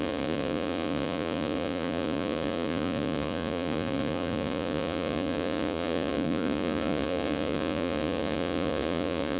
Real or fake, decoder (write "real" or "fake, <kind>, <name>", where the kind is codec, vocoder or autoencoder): fake, vocoder, Vocos